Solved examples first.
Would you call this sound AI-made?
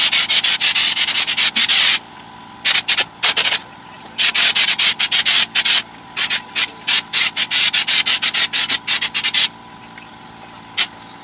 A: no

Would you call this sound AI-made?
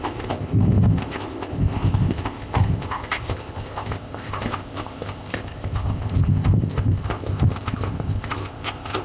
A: yes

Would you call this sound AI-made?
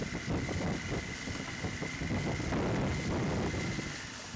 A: no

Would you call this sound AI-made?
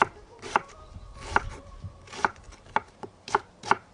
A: yes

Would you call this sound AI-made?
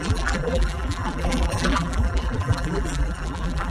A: yes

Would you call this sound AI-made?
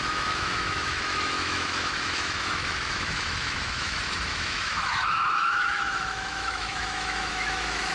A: yes